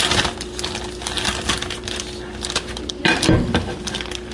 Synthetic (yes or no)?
no